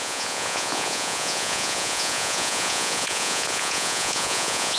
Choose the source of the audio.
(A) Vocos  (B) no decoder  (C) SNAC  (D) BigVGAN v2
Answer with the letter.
A